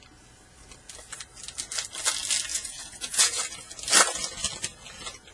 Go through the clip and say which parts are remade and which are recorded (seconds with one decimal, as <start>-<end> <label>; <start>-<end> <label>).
0.0-2.5 recorded; 2.5-3.4 remade; 3.4-5.3 recorded

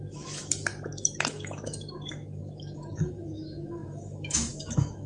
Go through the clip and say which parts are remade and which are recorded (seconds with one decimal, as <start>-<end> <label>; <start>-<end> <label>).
0.0-5.1 remade

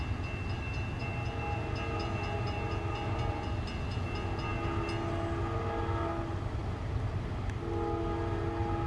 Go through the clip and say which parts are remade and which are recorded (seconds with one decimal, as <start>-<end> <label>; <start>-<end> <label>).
0.0-8.9 recorded

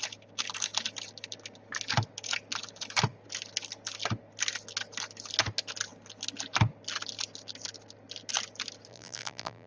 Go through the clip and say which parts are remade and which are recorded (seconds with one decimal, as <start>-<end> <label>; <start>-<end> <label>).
0.0-8.9 recorded; 8.9-9.7 remade